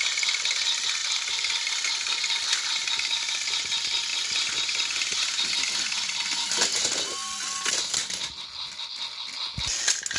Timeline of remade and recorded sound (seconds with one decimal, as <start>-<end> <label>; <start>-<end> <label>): 0.0-10.2 recorded